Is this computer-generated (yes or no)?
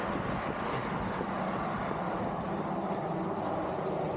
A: no